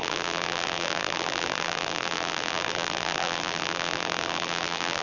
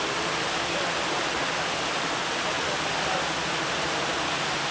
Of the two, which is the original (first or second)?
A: second